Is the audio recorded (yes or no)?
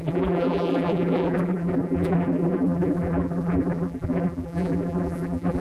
no